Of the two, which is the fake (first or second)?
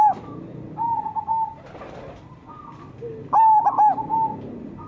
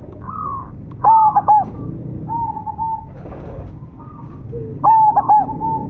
second